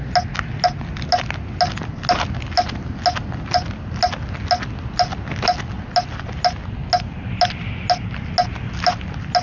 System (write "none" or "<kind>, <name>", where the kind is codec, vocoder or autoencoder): none